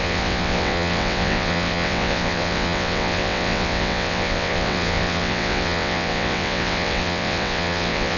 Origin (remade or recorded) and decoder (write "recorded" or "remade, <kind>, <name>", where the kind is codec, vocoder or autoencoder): remade, vocoder, WaveNeXt